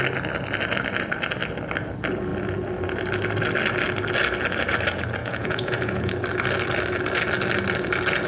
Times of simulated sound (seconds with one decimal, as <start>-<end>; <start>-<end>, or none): 5.2-6.1